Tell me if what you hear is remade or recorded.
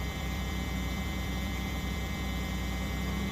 remade